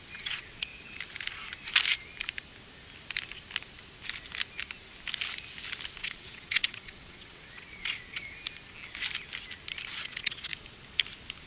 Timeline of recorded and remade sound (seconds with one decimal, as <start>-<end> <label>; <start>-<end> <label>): 0.0-0.7 remade; 0.7-6.0 recorded; 6.0-8.2 remade; 8.2-10.0 recorded; 10.0-10.5 remade; 10.5-11.5 recorded